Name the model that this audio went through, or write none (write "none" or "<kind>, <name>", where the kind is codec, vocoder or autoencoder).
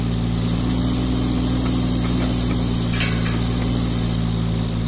none